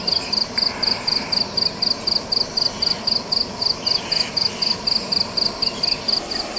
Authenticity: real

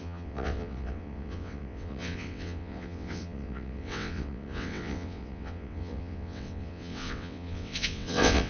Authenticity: fake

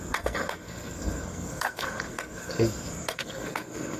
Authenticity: fake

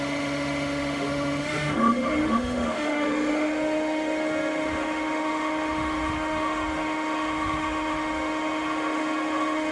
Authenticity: fake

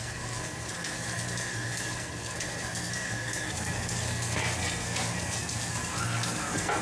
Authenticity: fake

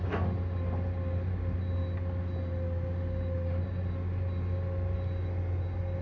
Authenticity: real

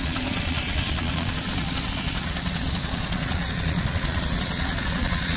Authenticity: fake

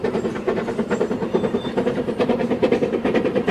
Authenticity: fake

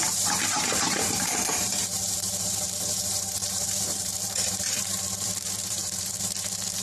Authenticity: fake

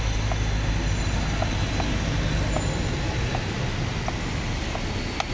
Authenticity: real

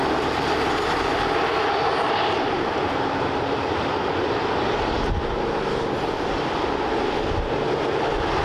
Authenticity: real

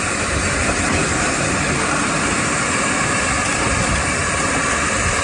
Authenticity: fake